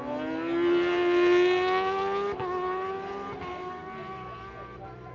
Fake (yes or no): no